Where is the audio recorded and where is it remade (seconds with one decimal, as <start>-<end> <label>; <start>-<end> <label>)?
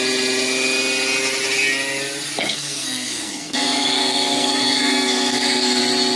0.0-2.4 recorded; 2.4-5.8 remade; 5.8-6.2 recorded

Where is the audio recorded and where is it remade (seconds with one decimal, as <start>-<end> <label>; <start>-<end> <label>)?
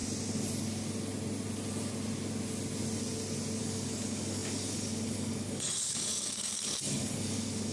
0.0-3.6 recorded; 3.6-7.7 remade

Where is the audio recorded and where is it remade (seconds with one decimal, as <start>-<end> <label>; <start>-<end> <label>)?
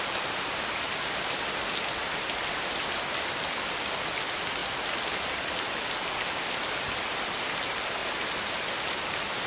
0.0-4.6 recorded; 4.6-5.3 remade; 5.3-8.0 recorded; 8.0-8.7 remade; 8.7-9.5 recorded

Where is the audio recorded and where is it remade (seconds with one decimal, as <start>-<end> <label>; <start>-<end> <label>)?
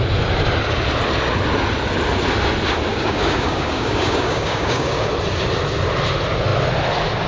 0.0-2.9 recorded; 2.9-5.1 remade; 5.1-7.3 recorded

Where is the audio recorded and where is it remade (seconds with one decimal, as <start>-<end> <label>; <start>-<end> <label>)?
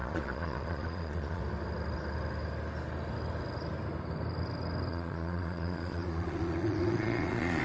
0.0-1.4 remade; 1.4-4.9 recorded; 4.9-7.6 remade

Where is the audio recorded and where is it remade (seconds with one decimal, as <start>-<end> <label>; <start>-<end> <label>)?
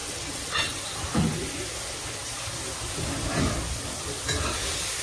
0.0-0.8 remade; 0.8-5.0 recorded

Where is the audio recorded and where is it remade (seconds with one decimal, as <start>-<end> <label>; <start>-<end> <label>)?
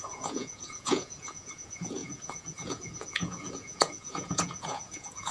0.0-5.3 remade